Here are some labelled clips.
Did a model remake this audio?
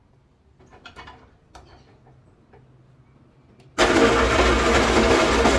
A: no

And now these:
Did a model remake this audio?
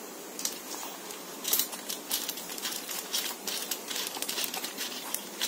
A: yes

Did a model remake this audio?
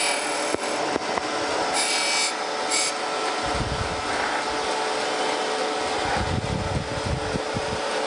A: no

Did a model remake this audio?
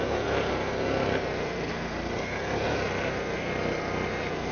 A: no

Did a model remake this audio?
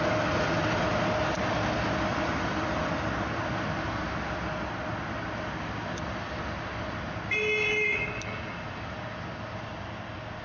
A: no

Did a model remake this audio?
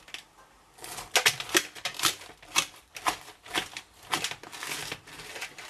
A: no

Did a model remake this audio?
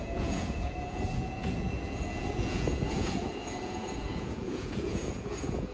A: yes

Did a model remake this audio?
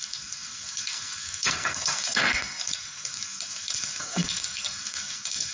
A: yes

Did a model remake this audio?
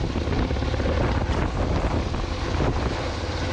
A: no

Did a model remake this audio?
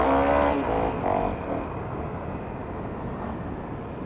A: no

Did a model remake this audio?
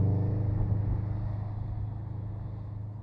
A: no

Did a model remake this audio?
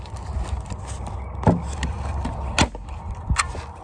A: no